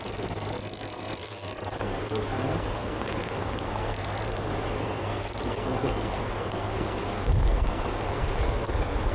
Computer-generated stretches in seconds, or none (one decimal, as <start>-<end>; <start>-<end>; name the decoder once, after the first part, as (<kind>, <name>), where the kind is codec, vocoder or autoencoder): 0.0-9.1 (codec, SNAC)